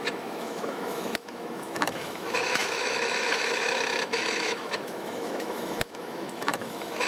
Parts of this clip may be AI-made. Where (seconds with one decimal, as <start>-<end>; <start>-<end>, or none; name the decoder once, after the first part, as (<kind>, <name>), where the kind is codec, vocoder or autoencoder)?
0.0-7.1 (autoencoder, DAC-VAE)

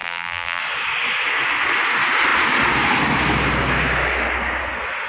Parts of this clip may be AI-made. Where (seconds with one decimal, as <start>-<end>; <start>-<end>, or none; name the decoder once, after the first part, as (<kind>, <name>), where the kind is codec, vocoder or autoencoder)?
0.0-0.6 (vocoder, BigVGAN v2)

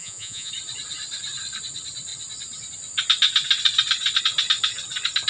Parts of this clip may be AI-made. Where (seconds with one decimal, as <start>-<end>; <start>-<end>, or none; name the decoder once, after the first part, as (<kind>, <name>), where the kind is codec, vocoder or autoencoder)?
0.0-0.5 (vocoder, Vocos)

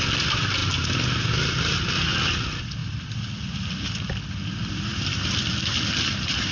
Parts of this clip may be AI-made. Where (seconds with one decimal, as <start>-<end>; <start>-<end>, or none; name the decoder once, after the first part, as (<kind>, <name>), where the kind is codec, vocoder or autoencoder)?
none

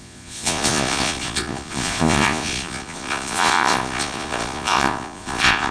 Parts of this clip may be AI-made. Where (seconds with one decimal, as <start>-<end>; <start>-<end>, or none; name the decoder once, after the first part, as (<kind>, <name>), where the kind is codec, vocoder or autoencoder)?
0.0-5.7 (vocoder, Vocos)

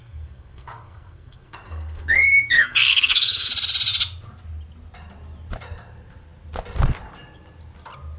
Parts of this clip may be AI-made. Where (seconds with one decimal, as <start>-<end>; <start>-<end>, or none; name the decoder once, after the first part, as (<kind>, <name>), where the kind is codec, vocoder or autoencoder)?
0.0-3.5 (codec, SNAC)

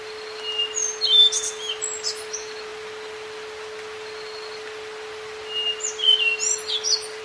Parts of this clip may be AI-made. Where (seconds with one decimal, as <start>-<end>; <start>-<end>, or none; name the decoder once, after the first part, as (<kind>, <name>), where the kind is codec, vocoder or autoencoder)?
none

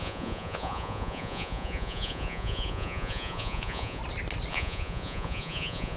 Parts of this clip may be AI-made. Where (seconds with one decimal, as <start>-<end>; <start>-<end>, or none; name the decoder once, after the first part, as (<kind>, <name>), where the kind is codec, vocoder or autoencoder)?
0.0-4.0 (vocoder, Vocos); 4.5-6.0